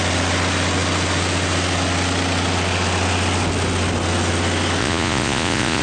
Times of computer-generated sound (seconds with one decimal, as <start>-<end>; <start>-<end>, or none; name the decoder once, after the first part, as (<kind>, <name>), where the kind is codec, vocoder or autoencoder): 4.8-5.8 (vocoder, Vocos)